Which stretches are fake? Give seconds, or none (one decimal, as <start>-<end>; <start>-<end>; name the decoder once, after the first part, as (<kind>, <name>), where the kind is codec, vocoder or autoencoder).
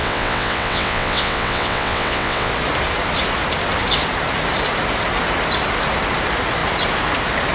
0.0-2.5 (vocoder, WaveNeXt)